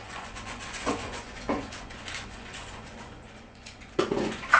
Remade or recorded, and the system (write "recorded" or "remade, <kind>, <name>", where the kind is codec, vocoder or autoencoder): remade, vocoder, Vocos